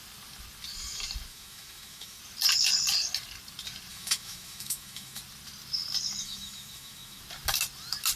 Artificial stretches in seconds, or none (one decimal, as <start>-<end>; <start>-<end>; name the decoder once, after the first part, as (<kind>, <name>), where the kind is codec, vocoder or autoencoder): 1.3-2.2 (autoencoder, DAC-VAE); 3.9-5.2; 6.2-7.2